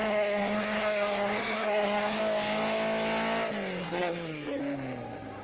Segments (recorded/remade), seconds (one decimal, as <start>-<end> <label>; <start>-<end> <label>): 0.0-2.2 remade; 2.2-3.8 recorded; 3.8-4.6 remade; 4.6-5.4 recorded